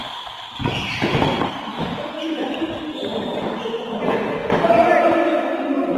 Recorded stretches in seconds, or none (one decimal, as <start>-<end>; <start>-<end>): 0.0-6.0